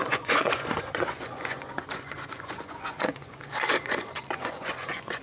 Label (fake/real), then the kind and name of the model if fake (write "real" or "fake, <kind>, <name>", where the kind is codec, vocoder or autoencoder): fake, vocoder, Vocos